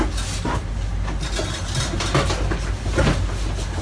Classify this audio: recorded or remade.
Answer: recorded